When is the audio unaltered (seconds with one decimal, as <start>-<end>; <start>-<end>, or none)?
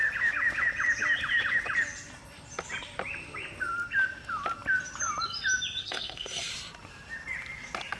0.0-5.8; 6.5-8.0